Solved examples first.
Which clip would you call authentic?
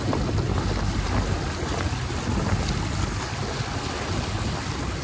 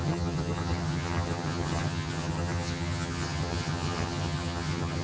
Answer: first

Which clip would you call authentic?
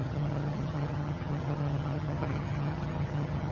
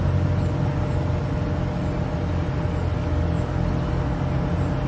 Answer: second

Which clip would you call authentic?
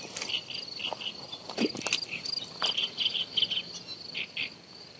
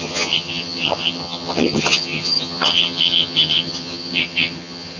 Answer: first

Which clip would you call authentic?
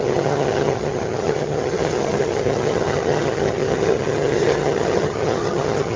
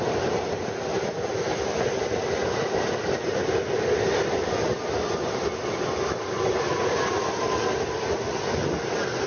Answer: second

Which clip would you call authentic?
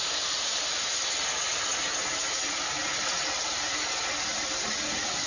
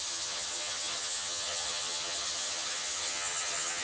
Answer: first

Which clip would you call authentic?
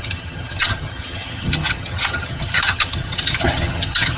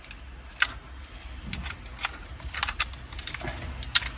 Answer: second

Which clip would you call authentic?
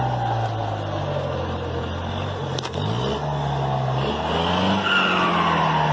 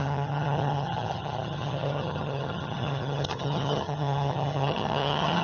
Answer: first